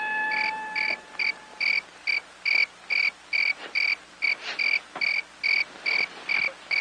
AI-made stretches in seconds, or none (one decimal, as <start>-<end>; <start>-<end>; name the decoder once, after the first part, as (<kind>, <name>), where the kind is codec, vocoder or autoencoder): none